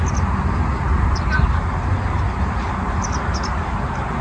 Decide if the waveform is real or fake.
real